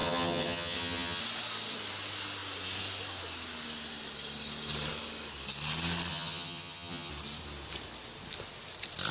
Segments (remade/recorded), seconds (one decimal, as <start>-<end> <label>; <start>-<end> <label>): 0.0-1.2 remade; 1.2-6.1 recorded; 6.1-7.1 remade; 7.1-9.1 recorded